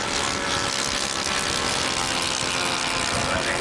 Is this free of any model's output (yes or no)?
yes